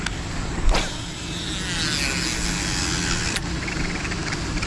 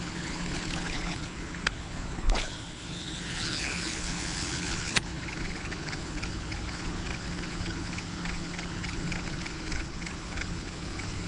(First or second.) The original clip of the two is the first